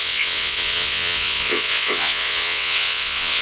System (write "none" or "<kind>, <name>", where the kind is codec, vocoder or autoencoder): vocoder, WaveNeXt